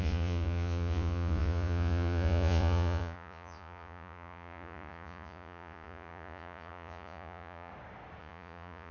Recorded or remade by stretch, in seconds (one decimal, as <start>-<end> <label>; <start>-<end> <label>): 0.0-7.7 remade; 7.7-8.2 recorded; 8.2-8.9 remade